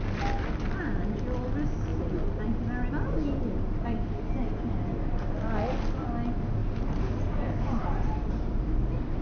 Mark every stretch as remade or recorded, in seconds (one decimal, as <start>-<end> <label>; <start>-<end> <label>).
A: 0.0-6.6 recorded; 6.6-7.1 remade; 7.1-7.8 recorded; 7.8-8.5 remade; 8.5-9.2 recorded